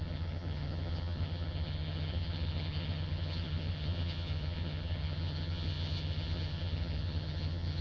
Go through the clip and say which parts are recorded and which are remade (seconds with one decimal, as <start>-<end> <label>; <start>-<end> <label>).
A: 0.0-7.8 remade